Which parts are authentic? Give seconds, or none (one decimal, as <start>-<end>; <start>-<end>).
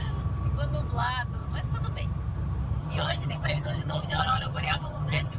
0.0-2.8